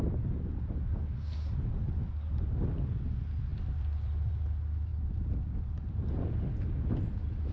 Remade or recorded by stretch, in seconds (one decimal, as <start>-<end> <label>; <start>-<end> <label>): 0.0-3.5 recorded; 3.5-4.3 remade; 4.3-7.5 recorded